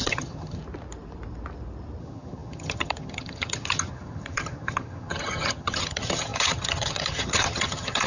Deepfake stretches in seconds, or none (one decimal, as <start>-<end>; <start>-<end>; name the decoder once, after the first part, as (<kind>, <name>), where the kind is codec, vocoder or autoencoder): 0.0-0.6 (vocoder, HiFi-GAN); 2.0-8.1